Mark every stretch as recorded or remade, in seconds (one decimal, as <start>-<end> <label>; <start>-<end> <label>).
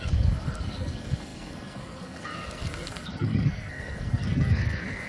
0.0-5.1 remade